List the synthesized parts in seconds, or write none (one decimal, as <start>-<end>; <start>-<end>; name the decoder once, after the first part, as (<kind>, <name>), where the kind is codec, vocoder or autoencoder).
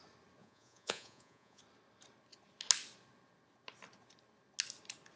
0.4-1.6 (vocoder, Vocos)